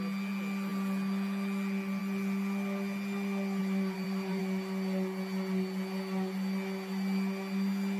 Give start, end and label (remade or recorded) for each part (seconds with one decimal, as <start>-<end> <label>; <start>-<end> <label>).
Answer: 0.0-3.6 recorded; 3.6-4.4 remade; 4.4-8.0 recorded